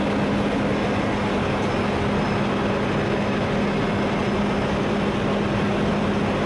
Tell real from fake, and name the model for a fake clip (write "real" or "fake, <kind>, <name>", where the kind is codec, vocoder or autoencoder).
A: real